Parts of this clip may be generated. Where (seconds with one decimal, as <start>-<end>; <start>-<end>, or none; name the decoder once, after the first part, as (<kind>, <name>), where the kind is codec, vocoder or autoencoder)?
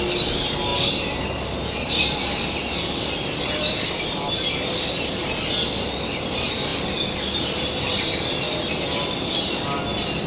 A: 0.0-10.3 (vocoder, BigVGAN v2)